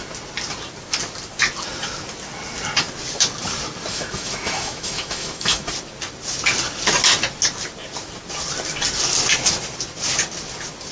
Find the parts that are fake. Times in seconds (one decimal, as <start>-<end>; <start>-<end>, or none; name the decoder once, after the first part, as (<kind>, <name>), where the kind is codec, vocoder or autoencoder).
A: 3.9-5.7 (autoencoder, DAC-VAE)